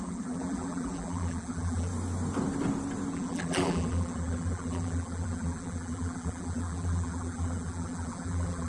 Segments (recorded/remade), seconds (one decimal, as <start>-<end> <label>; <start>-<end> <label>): 0.0-1.9 remade; 1.9-3.1 recorded; 3.1-8.7 remade